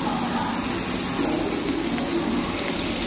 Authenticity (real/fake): real